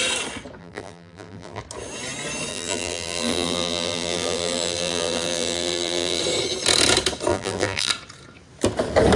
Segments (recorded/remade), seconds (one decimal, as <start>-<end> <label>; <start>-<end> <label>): 0.0-0.6 recorded; 0.6-1.6 remade; 1.6-2.5 recorded; 2.5-6.2 remade; 6.2-7.3 recorded; 7.3-7.9 remade; 7.9-9.2 recorded

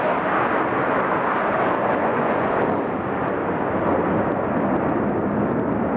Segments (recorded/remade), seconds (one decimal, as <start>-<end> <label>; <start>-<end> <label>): 0.0-2.0 recorded; 2.0-2.5 remade; 2.5-6.0 recorded

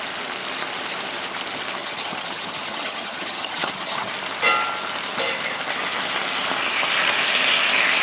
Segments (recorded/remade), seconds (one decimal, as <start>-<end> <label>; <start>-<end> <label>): 0.0-1.8 recorded; 1.8-4.1 remade; 4.1-8.0 recorded

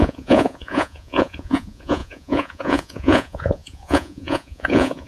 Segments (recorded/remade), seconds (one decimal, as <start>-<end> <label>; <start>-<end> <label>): 0.0-5.1 remade

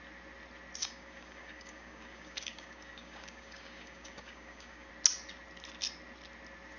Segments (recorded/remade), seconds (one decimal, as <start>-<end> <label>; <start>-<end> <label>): 0.0-0.8 recorded; 0.8-4.9 remade; 4.9-6.8 recorded